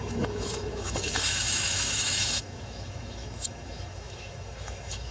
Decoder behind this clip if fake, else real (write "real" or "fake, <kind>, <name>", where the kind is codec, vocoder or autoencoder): fake, autoencoder, DAC-VAE